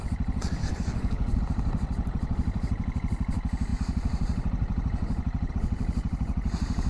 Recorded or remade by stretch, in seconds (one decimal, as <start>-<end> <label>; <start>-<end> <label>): 0.0-0.6 recorded; 0.6-1.4 remade; 1.4-6.9 recorded